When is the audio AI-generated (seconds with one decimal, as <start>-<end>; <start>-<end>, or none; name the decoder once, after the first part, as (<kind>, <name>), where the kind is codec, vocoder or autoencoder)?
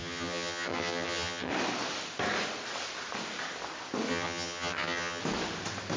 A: 0.0-1.5 (vocoder, HiFi-GAN); 4.1-5.2